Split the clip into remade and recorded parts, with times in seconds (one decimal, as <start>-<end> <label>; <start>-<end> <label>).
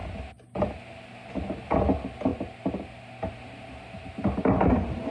0.0-5.1 recorded